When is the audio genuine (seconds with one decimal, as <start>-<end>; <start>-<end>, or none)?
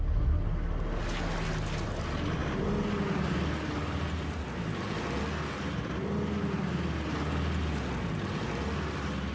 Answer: 0.0-9.3